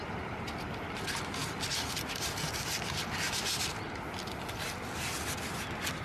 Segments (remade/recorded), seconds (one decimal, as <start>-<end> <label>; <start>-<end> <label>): 0.0-6.0 recorded